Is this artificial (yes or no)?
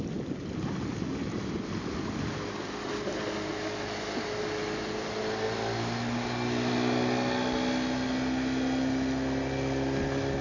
no